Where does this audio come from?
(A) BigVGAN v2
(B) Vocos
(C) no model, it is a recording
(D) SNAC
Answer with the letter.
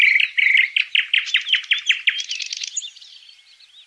C